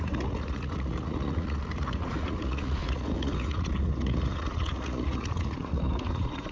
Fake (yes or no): yes